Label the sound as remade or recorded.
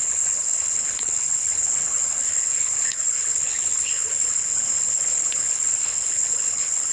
remade